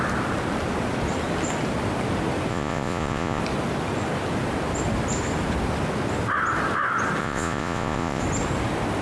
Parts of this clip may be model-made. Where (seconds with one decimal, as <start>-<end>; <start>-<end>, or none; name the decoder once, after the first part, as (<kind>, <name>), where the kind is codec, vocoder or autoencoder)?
2.5-3.4 (vocoder, Vocos); 7.2-8.2